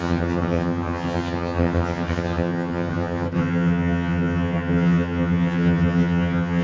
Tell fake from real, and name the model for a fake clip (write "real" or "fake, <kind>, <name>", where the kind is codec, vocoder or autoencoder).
fake, vocoder, HiFi-GAN